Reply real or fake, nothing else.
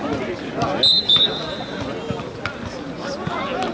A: real